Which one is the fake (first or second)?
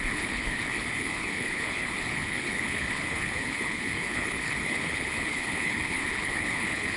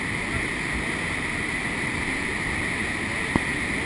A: first